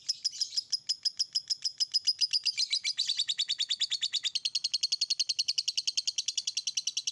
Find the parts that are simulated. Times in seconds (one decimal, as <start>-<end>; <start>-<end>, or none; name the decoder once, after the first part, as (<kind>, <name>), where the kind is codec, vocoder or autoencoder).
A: none